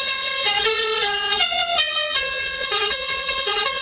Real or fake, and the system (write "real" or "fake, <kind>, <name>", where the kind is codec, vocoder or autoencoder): fake, vocoder, WaveNeXt